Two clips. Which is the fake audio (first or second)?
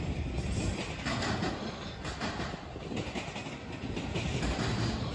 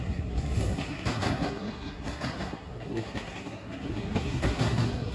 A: second